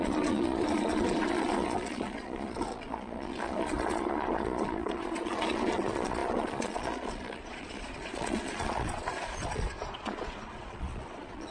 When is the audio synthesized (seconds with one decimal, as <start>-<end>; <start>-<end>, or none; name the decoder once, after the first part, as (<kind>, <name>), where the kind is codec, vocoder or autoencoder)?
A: 0.0-11.5 (vocoder, Vocos)